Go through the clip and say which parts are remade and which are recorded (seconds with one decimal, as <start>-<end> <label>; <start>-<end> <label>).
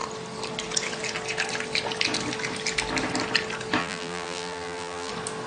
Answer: 0.0-3.8 recorded; 3.8-5.1 remade; 5.1-5.5 recorded